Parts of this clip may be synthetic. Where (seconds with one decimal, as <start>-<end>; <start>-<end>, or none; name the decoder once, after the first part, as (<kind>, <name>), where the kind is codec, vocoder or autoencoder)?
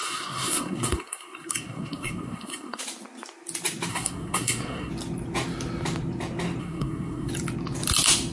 0.0-2.8 (codec, SNAC); 3.9-4.9; 6.6-7.3